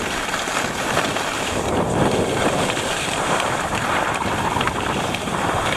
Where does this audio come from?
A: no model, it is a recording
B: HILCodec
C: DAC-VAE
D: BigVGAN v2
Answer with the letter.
D